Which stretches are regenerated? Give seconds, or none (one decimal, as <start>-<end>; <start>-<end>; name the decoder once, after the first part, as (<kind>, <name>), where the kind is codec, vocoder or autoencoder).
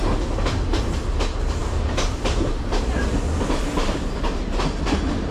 none